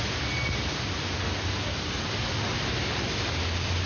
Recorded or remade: recorded